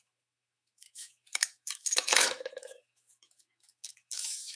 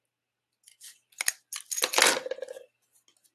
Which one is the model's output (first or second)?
first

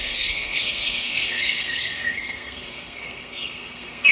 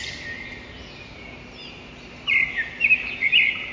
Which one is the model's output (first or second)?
first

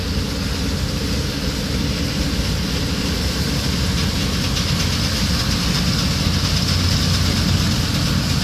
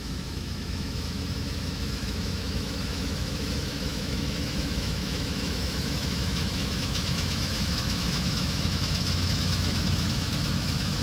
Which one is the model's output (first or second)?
second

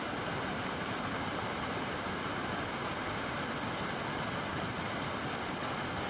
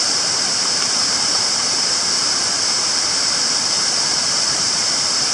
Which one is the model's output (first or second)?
second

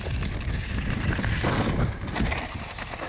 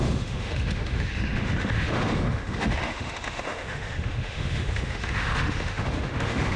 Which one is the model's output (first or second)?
second